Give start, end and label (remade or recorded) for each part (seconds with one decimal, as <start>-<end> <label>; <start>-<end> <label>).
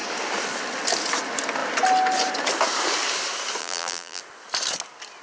0.0-3.6 recorded; 3.6-4.2 remade; 4.2-5.2 recorded